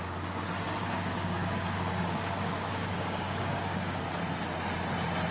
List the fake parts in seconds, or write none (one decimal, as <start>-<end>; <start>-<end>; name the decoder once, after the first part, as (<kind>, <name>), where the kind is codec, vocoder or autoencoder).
0.8-4.0 (codec, DAC)